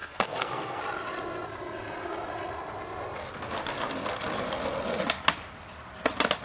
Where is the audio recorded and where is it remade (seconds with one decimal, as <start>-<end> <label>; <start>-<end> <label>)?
0.0-0.8 remade; 0.8-6.4 recorded